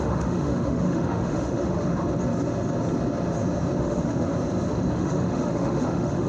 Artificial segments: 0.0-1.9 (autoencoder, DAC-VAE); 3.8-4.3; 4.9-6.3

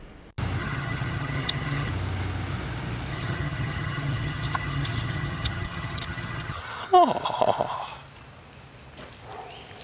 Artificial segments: 0.6-1.9 (vocoder, HiFi-GAN); 3.1-6.6